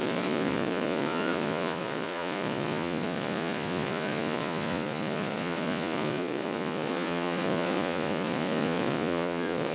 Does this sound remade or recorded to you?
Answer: remade